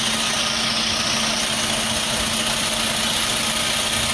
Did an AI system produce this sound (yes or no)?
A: no